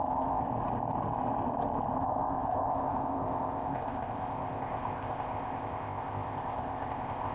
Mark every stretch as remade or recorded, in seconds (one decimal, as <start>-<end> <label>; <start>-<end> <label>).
0.0-0.4 remade; 0.4-2.0 recorded; 2.0-7.3 remade